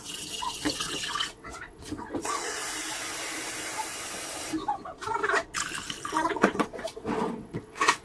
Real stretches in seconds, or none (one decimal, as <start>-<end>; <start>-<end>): 2.6-6.3